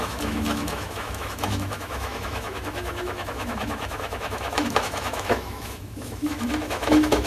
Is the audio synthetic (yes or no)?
yes